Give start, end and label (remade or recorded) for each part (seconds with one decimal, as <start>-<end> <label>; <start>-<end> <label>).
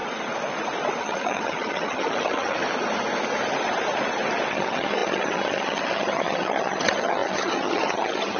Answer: 0.0-1.0 recorded; 1.0-2.6 remade; 2.6-4.5 recorded; 4.5-8.4 remade